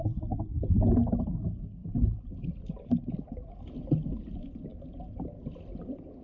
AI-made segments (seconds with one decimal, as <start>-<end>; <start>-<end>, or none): 1.8-3.6